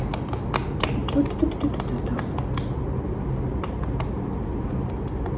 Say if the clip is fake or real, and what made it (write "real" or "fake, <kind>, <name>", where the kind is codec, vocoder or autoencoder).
real